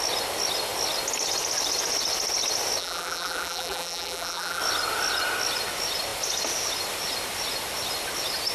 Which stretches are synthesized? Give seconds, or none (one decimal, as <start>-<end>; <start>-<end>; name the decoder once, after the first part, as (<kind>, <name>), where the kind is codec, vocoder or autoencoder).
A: 2.8-4.6 (vocoder, BigVGAN v2)